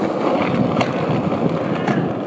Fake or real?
real